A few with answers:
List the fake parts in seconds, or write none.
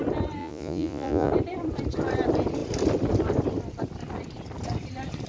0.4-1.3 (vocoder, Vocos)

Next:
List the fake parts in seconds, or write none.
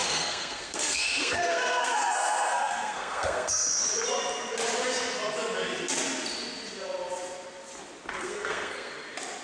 0.0-3.8 (codec, SNAC); 8.2-8.9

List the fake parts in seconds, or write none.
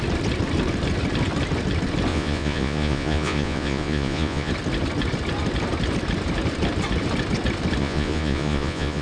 2.1-4.5 (vocoder, Vocos); 7.8-9.0